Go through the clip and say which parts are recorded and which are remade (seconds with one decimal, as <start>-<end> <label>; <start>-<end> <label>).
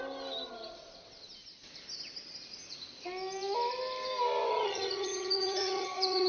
0.0-4.5 recorded; 4.5-6.3 remade